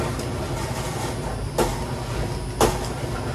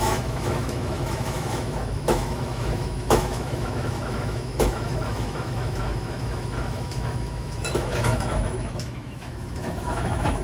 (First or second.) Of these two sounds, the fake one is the second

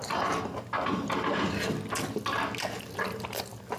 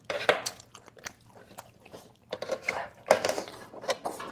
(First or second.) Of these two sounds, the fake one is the second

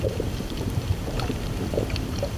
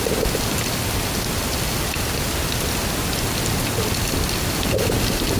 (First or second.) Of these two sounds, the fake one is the first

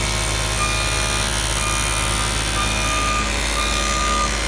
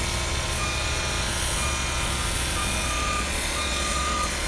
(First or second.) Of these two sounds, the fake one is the second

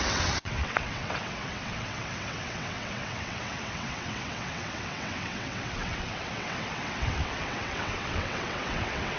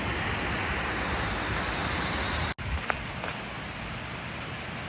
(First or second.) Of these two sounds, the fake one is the first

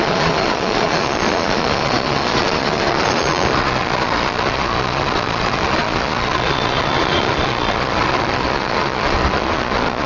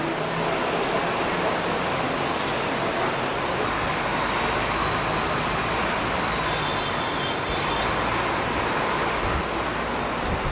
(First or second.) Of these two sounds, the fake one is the first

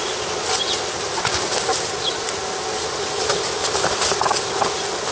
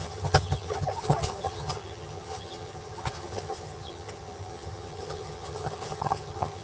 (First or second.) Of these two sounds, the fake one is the second